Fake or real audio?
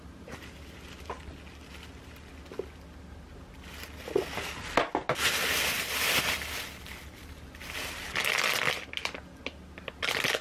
real